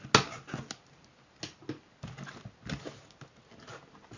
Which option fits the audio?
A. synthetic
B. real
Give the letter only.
B